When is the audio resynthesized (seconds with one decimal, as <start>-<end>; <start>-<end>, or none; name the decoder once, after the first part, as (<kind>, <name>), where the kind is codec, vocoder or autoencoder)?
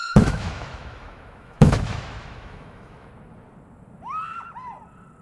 0.0-3.1 (autoencoder, DAC-VAE)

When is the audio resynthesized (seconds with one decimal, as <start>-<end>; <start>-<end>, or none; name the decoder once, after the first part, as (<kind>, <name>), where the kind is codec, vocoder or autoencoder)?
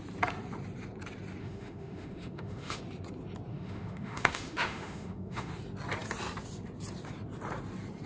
1.4-2.8 (autoencoder, DAC-VAE); 3.5-5.5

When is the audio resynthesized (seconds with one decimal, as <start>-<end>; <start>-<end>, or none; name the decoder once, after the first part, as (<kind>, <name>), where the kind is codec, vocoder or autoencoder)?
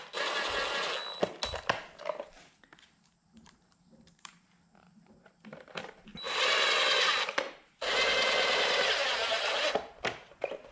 2.8-6.1 (vocoder, BigVGAN v2); 7.2-10.7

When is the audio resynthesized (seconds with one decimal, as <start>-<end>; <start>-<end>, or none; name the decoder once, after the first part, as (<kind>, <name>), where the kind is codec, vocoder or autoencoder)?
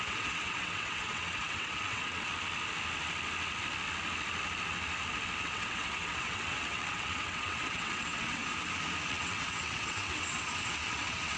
0.0-2.3 (vocoder, WaveNeXt); 5.4-8.4; 9.1-11.4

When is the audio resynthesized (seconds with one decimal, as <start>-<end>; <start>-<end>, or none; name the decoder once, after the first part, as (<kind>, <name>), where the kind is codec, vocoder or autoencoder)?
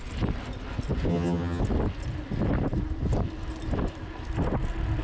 1.1-1.6 (vocoder, HiFi-GAN)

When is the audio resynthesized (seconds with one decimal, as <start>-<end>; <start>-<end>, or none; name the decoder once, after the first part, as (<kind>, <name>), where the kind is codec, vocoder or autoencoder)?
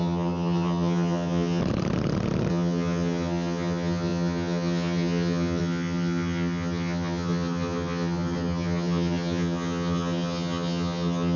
0.0-1.6 (vocoder, HiFi-GAN); 2.5-11.4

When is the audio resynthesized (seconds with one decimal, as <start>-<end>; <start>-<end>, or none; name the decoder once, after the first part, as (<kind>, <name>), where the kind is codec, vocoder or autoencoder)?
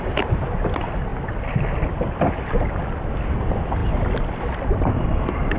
none